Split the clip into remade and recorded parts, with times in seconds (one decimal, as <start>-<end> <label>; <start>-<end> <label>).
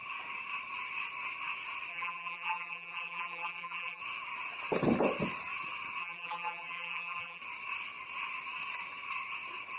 0.0-1.9 recorded; 1.9-4.0 remade; 4.0-6.0 recorded; 6.0-7.4 remade; 7.4-9.8 recorded